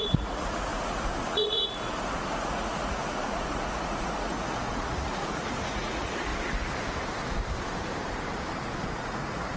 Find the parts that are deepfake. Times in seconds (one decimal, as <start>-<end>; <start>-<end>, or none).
0.0-6.3; 9.0-9.6

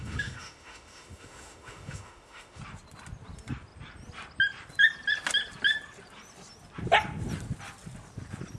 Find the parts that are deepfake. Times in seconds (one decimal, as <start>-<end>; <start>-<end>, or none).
0.0-2.6

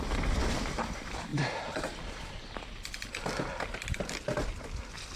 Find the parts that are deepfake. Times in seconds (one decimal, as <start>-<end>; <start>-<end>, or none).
1.3-2.4

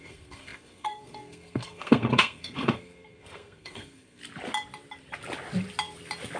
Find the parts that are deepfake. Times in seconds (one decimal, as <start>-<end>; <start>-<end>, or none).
0.0-4.2

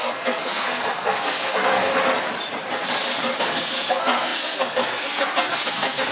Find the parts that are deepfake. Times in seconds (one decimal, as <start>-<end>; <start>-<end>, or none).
0.0-1.9; 3.4-6.1